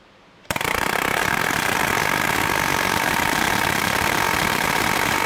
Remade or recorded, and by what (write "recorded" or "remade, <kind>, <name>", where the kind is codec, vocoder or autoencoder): remade, vocoder, BigVGAN v2